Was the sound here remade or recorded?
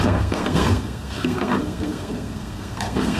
remade